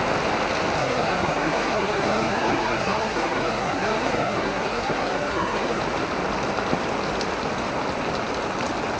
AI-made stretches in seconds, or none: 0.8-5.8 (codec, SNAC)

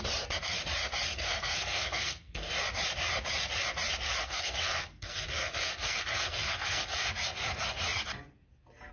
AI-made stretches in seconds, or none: 1.1-2.5 (codec, SNAC); 4.2-7.1

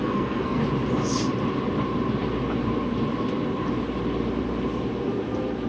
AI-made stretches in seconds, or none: 0.0-0.6 (codec, SNAC)

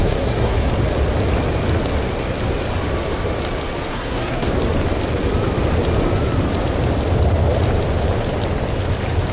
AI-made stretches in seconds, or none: 0.0-0.7 (codec, SNAC); 3.9-4.5